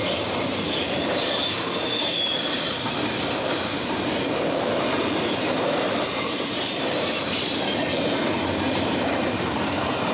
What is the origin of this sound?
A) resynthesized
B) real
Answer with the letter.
A